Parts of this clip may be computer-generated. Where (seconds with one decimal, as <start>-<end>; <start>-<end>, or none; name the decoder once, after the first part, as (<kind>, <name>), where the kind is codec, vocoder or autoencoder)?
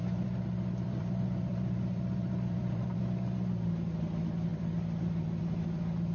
0.0-3.0 (vocoder, BigVGAN v2); 4.5-5.4